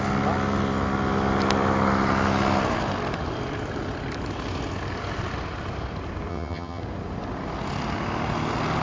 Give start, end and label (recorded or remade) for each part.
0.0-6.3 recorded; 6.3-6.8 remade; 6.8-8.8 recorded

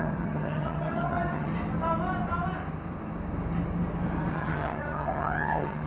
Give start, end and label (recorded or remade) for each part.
0.0-1.5 remade; 1.5-4.3 recorded; 4.3-5.9 remade

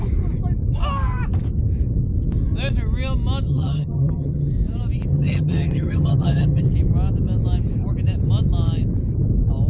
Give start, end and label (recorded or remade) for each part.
0.0-3.5 recorded; 3.5-4.5 remade; 4.5-5.1 recorded; 5.1-6.6 remade; 6.6-9.7 recorded

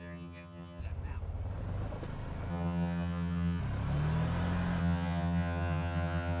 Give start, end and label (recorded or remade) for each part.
0.0-0.8 remade; 0.8-2.5 recorded; 2.5-3.6 remade; 3.6-4.8 recorded; 4.8-6.4 remade

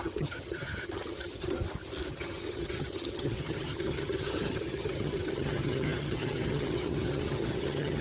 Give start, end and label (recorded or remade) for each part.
0.0-1.3 remade; 1.3-2.1 recorded; 2.1-8.0 remade

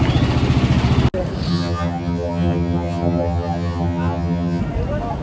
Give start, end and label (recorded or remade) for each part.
0.0-1.5 recorded; 1.5-4.6 remade; 4.6-5.2 recorded

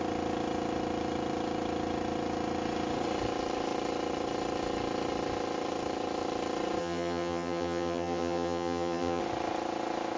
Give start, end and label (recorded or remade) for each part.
0.0-6.8 recorded; 6.8-9.2 remade; 9.2-10.2 recorded

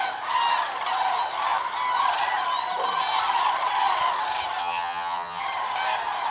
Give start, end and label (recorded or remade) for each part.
0.0-4.6 recorded; 4.6-5.4 remade; 5.4-6.3 recorded